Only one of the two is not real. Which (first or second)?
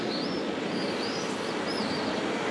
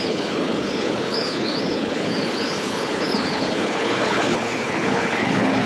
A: second